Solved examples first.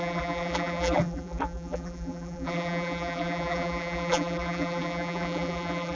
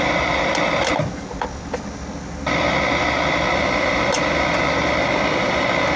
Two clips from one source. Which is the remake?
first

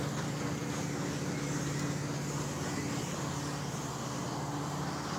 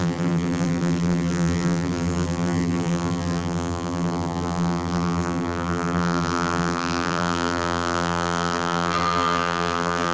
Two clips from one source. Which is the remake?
second